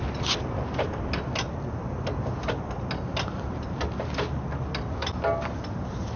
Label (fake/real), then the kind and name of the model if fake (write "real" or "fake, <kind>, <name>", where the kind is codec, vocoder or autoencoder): real